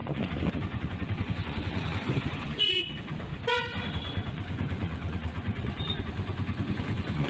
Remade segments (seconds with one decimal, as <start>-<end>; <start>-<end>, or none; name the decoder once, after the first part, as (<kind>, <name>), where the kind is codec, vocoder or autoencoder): 0.0-3.3 (vocoder, Vocos); 3.9-7.3

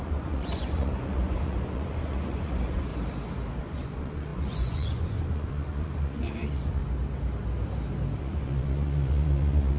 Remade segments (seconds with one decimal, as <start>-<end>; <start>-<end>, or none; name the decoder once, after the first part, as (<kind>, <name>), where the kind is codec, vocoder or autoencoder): 0.0-2.9 (vocoder, Vocos); 3.6-6.8; 8.2-9.8